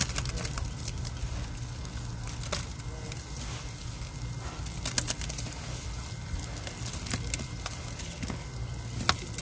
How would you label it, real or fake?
real